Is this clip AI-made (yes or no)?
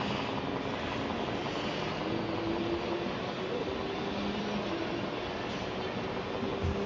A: no